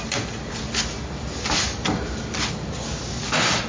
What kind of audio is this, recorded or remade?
recorded